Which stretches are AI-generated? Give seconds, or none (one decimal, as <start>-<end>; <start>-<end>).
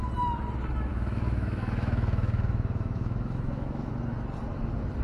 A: 0.9-3.9